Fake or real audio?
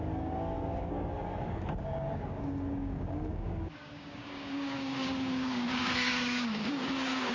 fake